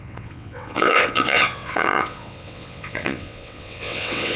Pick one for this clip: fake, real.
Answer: fake